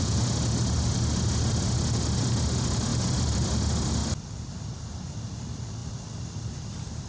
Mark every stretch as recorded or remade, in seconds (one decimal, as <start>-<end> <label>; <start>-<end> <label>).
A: 0.0-2.9 recorded; 2.9-3.4 remade; 3.4-4.0 recorded; 4.0-4.5 remade; 4.5-5.8 recorded; 5.8-6.4 remade; 6.4-7.1 recorded